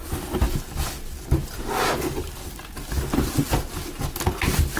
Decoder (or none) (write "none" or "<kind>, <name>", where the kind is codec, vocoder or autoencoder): none